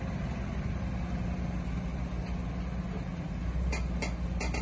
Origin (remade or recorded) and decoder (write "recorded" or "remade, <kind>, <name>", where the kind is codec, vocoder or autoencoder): recorded